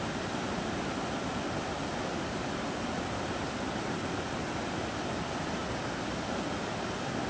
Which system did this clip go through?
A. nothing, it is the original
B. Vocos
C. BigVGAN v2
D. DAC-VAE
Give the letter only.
A